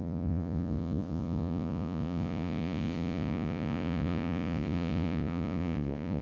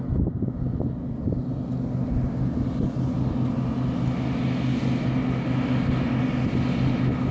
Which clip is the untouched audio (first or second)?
second